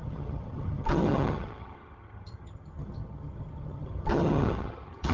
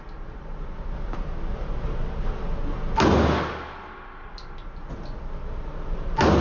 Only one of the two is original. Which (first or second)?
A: second